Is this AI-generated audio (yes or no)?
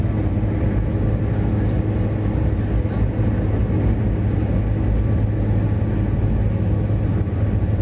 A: no